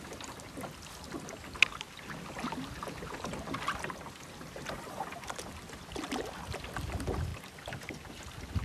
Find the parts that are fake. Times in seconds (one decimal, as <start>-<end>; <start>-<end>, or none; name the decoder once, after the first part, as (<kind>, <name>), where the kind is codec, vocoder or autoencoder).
none